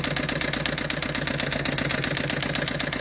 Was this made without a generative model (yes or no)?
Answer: yes